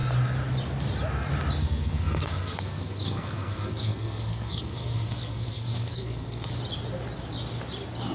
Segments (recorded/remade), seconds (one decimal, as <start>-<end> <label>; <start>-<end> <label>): 0.0-1.6 recorded; 1.6-6.5 remade; 6.5-8.1 recorded